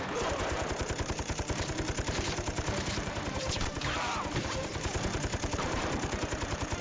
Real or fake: fake